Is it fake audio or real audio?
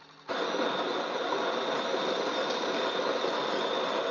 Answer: real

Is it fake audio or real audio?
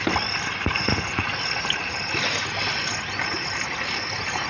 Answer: real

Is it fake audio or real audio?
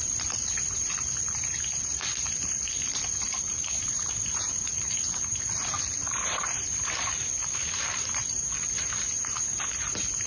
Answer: fake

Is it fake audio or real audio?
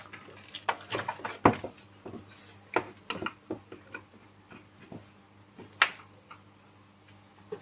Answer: real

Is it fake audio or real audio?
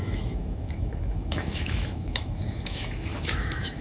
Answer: fake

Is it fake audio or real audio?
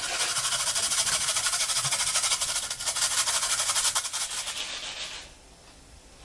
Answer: real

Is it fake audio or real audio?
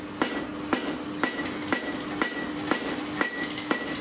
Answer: real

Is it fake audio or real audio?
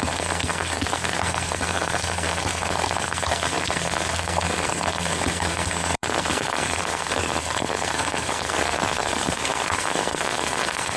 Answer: fake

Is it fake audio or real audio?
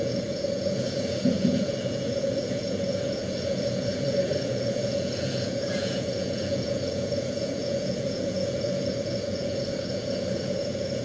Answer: fake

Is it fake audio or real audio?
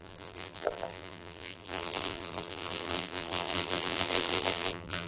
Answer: fake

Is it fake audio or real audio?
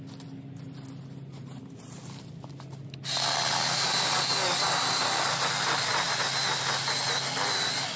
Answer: real